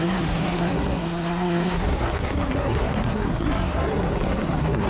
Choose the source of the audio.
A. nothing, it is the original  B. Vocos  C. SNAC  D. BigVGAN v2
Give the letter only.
C